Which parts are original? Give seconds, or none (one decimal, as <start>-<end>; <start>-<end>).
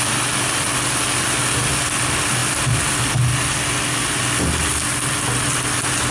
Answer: 0.0-6.1